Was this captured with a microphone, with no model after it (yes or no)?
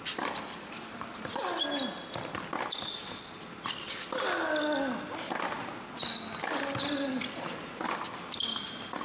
yes